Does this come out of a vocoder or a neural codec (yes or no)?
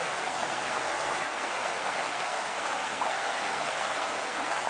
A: yes